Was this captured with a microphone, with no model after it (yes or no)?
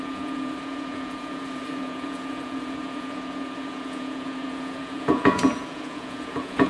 no